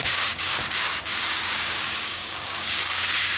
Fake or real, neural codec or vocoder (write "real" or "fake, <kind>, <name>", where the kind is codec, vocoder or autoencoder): fake, codec, DAC